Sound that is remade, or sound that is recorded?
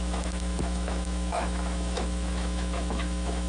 remade